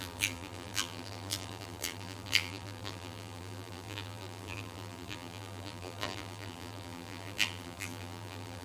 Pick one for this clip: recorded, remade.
remade